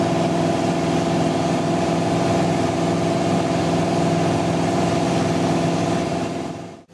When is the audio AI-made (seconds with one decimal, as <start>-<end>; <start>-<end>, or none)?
6.1-6.9